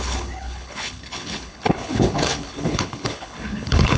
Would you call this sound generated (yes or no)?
yes